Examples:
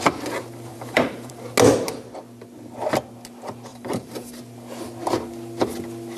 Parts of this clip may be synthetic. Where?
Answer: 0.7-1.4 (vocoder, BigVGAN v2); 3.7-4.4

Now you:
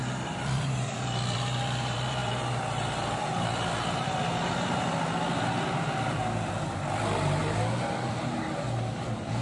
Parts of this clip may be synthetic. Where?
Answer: 0.0-9.4 (vocoder, BigVGAN v2)